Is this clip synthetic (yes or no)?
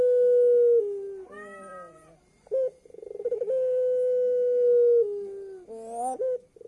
no